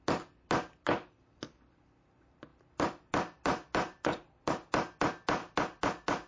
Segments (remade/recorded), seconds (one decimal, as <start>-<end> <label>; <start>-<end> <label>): 0.0-2.5 recorded; 2.5-4.7 remade; 4.7-5.4 recorded; 5.4-6.3 remade